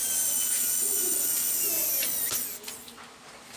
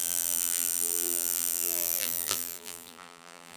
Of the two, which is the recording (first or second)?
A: first